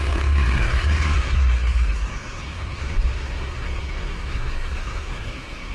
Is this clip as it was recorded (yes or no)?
no